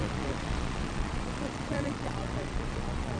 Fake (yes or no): yes